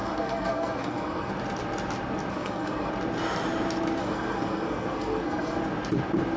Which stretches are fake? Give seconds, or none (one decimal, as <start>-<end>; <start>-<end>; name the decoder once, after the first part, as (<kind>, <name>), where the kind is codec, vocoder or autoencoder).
0.0-1.3 (codec, SNAC); 2.3-2.9; 4.0-5.6